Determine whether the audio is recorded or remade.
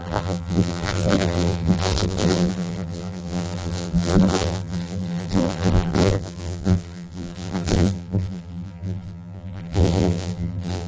remade